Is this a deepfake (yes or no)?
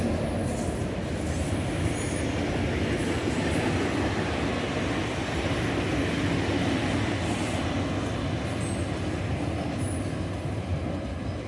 no